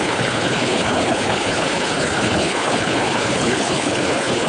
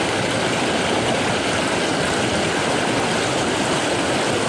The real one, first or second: second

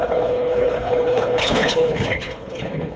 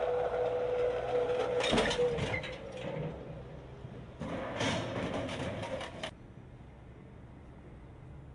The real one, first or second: second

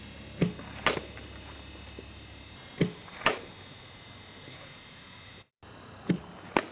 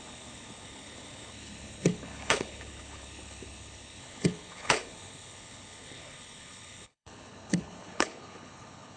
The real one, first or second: first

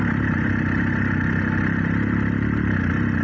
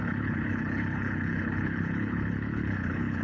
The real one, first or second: first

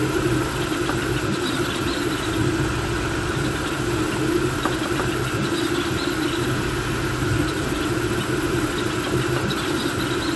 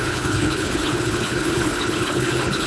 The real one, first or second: first